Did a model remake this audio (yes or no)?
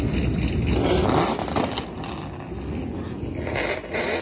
no